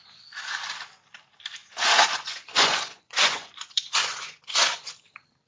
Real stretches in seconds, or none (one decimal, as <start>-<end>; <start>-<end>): 0.0-1.6; 4.9-5.5